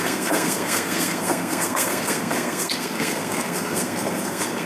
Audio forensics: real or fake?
fake